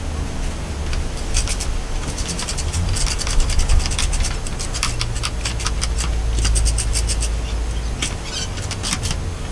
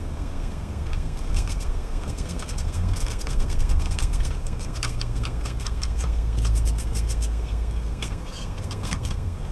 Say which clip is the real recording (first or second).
first